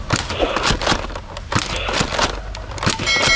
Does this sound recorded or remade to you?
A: recorded